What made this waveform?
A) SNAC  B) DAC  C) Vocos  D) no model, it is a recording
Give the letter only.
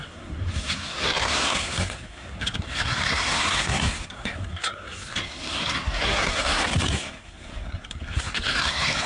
A